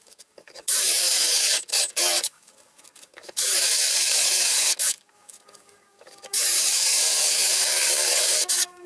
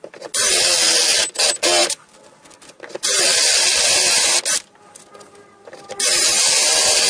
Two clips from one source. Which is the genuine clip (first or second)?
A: second